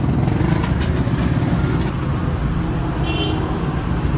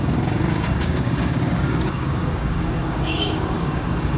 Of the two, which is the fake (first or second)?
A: second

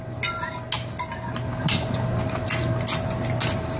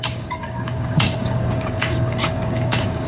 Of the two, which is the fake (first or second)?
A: second